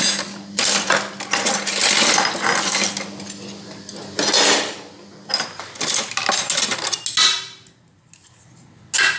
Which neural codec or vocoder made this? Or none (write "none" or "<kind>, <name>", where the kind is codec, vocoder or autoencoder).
none